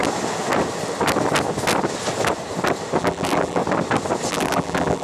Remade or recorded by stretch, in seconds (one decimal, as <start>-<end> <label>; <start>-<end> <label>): 0.0-3.0 recorded; 3.0-3.6 remade; 3.6-4.3 recorded; 4.3-5.0 remade